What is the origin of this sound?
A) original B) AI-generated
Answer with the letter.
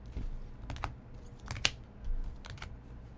A